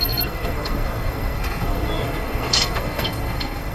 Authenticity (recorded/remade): remade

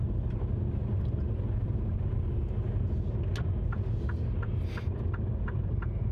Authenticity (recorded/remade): recorded